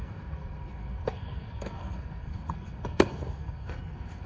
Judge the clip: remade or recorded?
remade